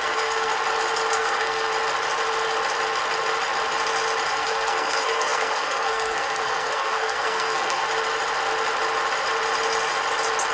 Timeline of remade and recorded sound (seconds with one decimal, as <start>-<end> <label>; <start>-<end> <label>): 0.0-0.5 remade; 0.5-1.1 recorded; 1.1-1.7 remade; 1.7-4.3 recorded; 4.3-7.8 remade; 7.8-10.5 recorded

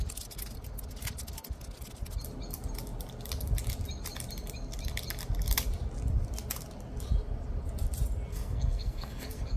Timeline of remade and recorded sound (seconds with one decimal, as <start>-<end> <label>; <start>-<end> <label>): 0.0-8.3 recorded; 8.3-9.6 remade